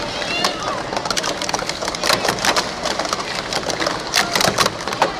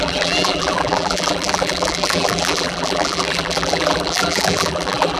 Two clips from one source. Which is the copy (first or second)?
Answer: second